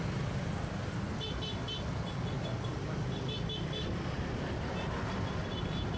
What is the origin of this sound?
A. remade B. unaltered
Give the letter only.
B